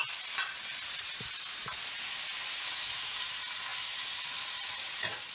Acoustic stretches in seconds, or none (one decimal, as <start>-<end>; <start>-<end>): 0.0-5.3